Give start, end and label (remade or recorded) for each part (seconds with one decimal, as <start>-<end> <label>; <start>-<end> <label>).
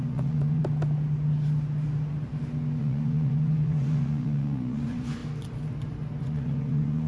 0.0-0.6 remade; 0.6-2.8 recorded; 2.8-5.2 remade; 5.2-6.2 recorded; 6.2-7.1 remade